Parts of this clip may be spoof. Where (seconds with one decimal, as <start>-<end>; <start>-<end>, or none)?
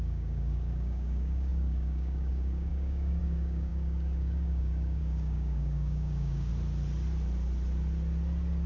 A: 0.0-6.5